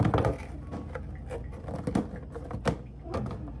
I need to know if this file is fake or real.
real